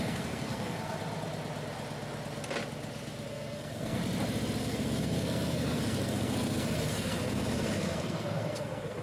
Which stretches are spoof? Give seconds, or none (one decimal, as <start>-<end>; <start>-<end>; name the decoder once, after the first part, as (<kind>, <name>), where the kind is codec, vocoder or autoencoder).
0.0-1.0 (codec, SNAC); 3.3-4.0; 4.6-9.0